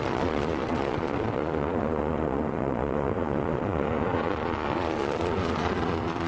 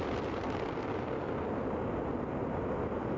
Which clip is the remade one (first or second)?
first